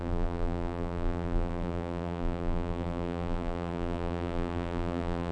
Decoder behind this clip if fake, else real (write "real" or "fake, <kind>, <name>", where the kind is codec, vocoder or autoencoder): fake, vocoder, BigVGAN v2